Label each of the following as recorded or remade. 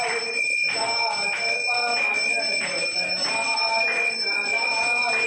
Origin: recorded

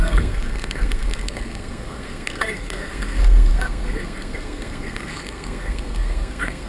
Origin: remade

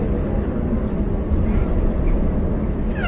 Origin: recorded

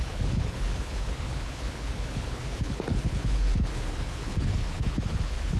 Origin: remade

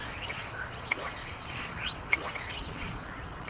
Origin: remade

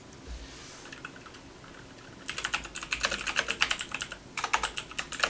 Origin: recorded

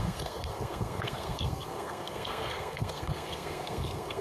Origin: remade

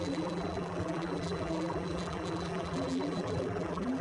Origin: remade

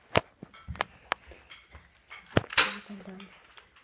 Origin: recorded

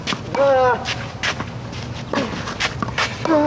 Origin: recorded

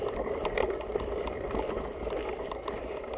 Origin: recorded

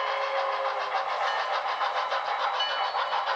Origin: recorded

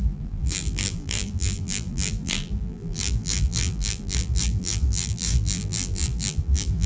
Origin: remade